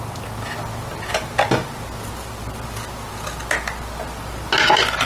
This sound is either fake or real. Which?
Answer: real